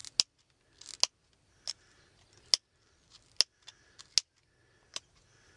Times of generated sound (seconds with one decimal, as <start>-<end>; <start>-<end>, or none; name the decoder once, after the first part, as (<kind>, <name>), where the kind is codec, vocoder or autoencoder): none